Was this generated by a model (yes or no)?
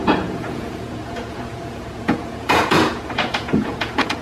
yes